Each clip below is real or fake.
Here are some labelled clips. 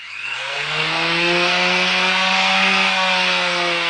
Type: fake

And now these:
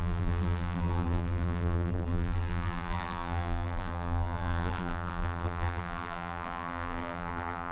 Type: fake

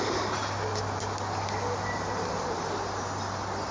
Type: real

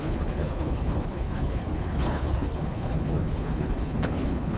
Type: fake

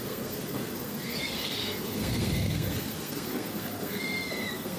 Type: fake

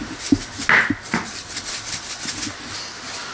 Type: real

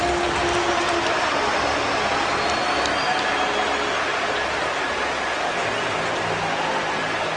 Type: real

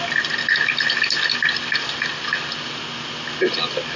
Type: real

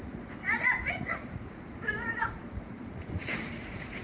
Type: fake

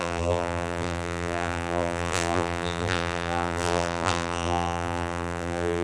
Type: fake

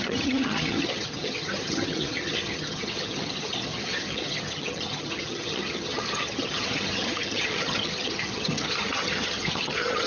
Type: fake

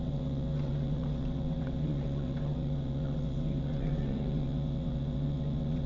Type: fake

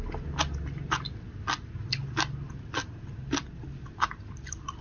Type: real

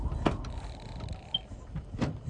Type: real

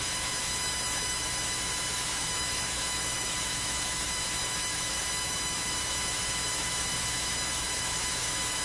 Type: fake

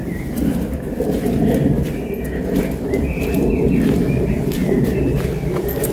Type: real